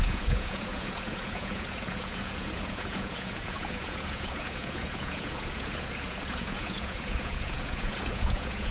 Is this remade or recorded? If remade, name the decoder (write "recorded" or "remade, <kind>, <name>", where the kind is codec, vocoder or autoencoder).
remade, vocoder, Vocos